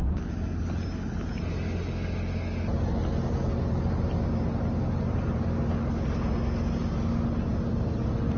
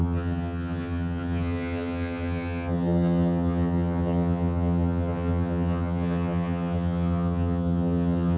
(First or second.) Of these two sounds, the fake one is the second